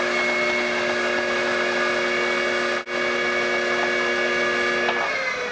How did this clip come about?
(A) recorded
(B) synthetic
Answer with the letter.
A